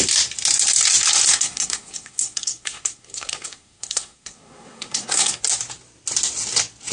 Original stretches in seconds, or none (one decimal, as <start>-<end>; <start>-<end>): 0.0-1.3; 5.4-6.9